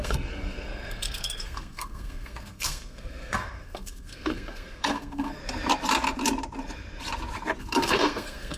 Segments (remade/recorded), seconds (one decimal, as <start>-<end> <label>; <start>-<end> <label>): 0.0-5.4 remade; 5.4-7.6 recorded; 7.6-8.6 remade